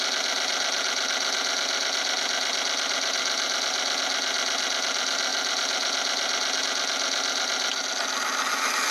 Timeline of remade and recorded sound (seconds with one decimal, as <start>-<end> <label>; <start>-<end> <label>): 0.0-8.9 recorded